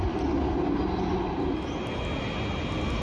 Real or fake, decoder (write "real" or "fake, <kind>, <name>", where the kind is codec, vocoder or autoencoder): real